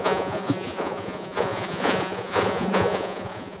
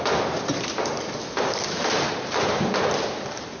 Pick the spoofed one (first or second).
first